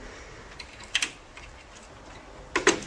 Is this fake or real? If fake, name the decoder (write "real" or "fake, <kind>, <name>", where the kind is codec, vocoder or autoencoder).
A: real